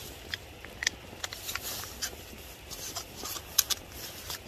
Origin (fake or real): real